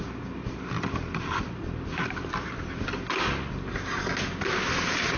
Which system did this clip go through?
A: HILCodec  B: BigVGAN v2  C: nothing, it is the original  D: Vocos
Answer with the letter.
C